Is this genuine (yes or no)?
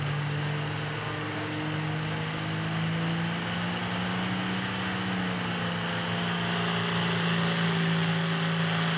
yes